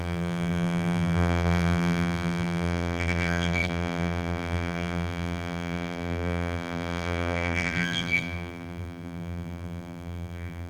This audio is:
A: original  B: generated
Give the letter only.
B